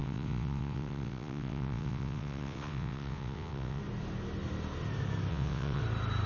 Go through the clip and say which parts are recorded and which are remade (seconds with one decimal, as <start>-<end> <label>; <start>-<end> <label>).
0.0-3.8 remade; 3.8-5.3 recorded; 5.3-5.8 remade; 5.8-6.3 recorded